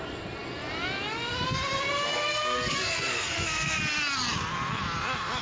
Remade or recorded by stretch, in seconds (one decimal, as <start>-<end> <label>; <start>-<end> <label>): 0.0-2.1 recorded; 2.1-3.8 remade; 3.8-5.4 recorded